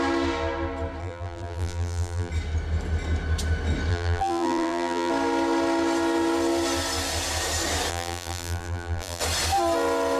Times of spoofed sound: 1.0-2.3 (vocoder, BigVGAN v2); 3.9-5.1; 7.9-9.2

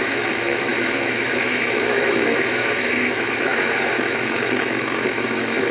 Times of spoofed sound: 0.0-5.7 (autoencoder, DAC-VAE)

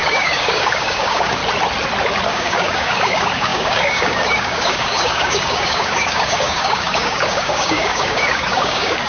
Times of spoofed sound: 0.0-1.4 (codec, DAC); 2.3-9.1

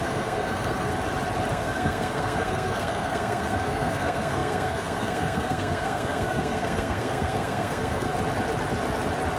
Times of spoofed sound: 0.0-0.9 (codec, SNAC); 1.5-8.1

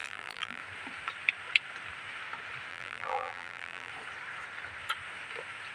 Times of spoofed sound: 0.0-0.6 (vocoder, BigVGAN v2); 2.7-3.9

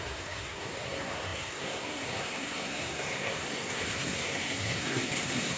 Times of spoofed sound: 0.0-5.6 (codec, SNAC)

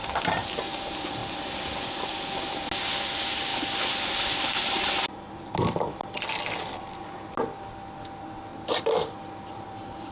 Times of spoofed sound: 3.5-4.6 (vocoder, BigVGAN v2); 8.5-10.1

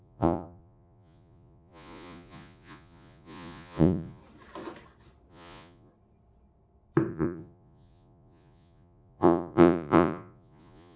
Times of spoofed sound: 0.0-4.2 (vocoder, Vocos); 5.3-5.9; 7.1-11.0